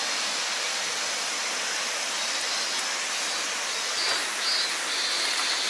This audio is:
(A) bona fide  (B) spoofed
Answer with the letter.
A